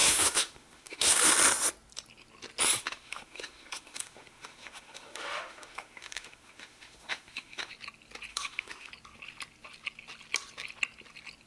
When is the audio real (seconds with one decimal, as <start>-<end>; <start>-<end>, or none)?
1.3-2.8; 7.7-8.3; 8.9-11.5